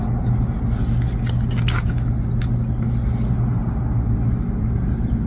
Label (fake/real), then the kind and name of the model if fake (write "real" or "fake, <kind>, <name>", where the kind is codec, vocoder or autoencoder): real